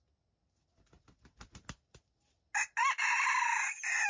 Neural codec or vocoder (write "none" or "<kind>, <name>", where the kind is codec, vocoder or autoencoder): none